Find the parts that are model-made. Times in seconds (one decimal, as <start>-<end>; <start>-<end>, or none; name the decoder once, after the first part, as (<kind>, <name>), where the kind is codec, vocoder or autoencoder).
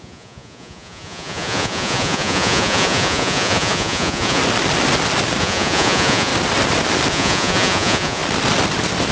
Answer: 0.0-4.4 (vocoder, Vocos); 5.4-6.3; 7.1-8.2